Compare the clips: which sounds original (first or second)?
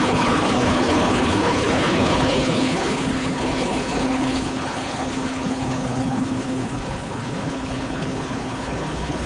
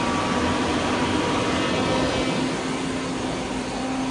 second